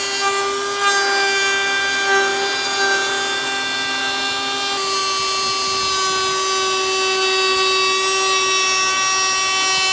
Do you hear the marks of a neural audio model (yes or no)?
no